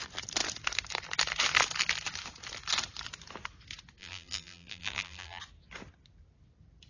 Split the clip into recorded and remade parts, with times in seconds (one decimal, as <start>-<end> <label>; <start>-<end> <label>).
0.0-4.0 recorded; 4.0-5.4 remade; 5.4-6.9 recorded